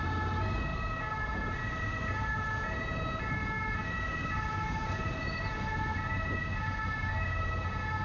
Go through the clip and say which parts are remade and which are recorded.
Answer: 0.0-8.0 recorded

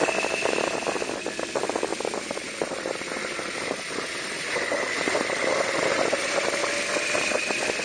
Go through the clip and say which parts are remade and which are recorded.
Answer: 0.0-1.9 recorded; 1.9-6.6 remade; 6.6-7.8 recorded

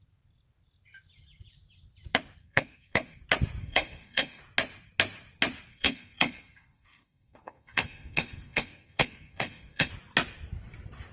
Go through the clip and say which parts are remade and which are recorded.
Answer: 0.0-2.4 recorded; 2.4-3.2 remade; 3.2-3.6 recorded; 3.6-4.4 remade; 4.4-5.7 recorded; 5.7-9.9 remade; 9.9-11.1 recorded

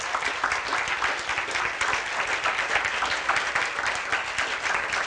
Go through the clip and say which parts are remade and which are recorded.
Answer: 0.0-5.1 recorded

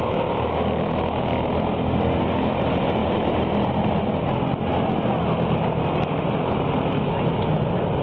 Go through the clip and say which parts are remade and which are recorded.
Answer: 0.0-8.0 recorded

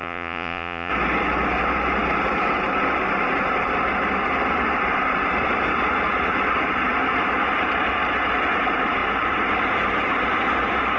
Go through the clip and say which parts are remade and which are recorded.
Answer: 0.0-0.9 remade; 0.9-11.0 recorded

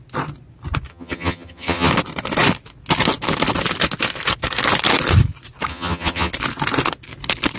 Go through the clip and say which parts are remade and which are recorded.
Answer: 0.0-0.9 recorded; 0.9-1.9 remade; 1.9-5.7 recorded; 5.7-6.3 remade; 6.3-7.6 recorded